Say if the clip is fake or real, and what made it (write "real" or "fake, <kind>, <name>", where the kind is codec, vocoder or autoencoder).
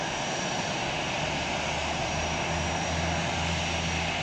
real